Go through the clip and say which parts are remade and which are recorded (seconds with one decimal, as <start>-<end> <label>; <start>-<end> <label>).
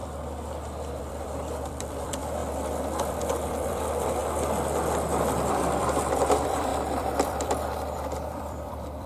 0.0-1.0 recorded; 1.0-2.4 remade; 2.4-3.1 recorded; 3.1-4.2 remade; 4.2-5.5 recorded; 5.5-9.1 remade